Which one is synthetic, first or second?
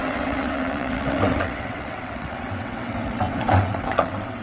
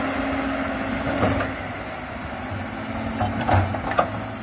first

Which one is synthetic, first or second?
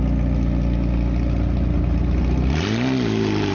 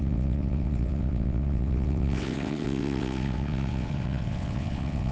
second